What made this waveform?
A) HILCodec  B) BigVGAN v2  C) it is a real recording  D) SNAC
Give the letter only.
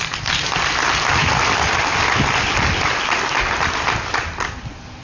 C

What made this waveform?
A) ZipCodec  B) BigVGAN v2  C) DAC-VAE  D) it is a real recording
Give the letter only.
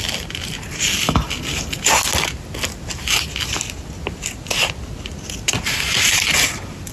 D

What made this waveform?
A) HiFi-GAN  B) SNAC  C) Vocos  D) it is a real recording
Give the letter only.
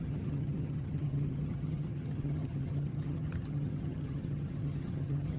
A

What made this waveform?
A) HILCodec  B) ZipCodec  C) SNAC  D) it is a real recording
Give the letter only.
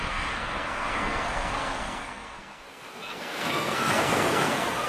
C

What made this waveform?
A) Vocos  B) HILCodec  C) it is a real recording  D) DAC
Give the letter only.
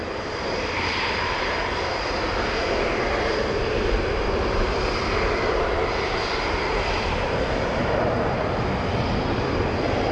C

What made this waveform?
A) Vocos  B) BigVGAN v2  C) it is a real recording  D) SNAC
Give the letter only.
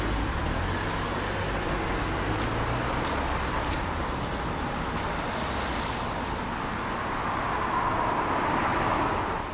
C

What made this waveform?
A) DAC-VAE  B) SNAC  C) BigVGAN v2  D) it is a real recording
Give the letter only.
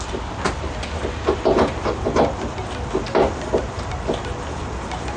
D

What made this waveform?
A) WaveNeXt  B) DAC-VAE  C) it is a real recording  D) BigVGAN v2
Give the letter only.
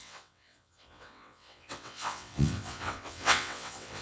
A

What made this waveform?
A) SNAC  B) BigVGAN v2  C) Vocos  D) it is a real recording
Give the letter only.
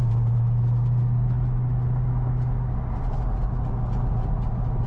D